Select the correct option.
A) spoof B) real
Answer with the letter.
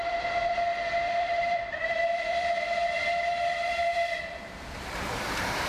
A